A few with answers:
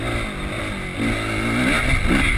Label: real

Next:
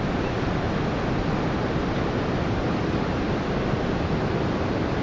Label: real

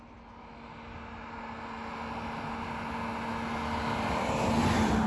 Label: real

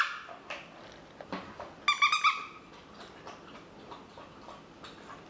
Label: real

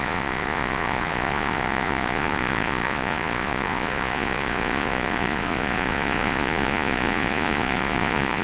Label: fake